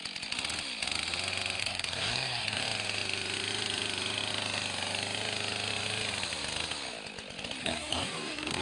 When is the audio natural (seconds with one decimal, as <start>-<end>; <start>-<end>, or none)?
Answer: 0.0-1.6; 2.6-7.6